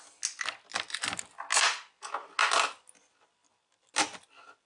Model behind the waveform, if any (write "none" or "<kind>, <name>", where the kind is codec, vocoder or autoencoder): none